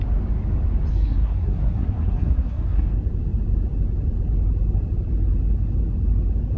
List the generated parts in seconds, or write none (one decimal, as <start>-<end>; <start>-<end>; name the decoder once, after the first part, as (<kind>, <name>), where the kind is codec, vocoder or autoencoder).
0.9-2.8 (codec, SNAC)